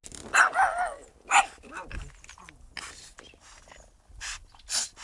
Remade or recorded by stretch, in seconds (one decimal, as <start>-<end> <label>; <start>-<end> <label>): 0.0-5.0 recorded